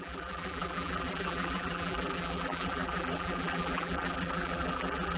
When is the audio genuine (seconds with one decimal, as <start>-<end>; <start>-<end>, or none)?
none